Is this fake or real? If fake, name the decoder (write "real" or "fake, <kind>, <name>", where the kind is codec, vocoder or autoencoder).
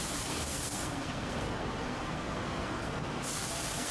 fake, codec, SNAC